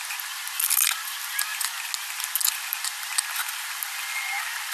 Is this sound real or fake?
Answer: real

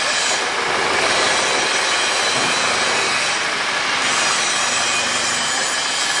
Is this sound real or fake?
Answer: real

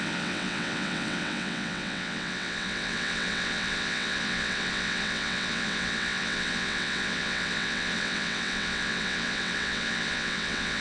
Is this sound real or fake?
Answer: fake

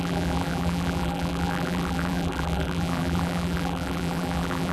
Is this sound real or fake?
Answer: fake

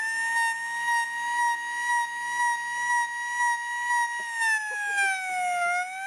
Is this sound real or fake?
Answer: real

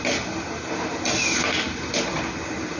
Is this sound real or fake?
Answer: real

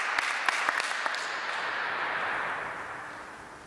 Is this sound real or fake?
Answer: real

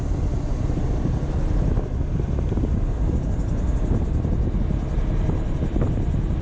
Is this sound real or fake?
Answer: real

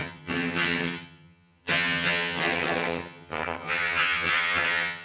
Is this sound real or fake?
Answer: fake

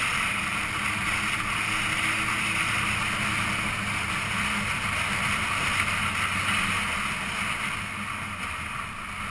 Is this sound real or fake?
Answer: real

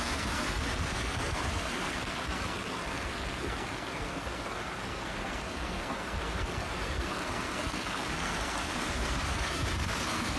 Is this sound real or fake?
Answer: fake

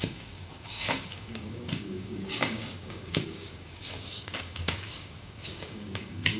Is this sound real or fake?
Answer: fake